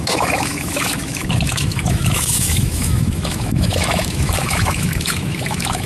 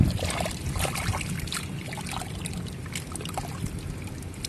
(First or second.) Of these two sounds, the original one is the second